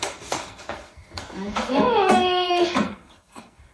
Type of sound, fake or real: fake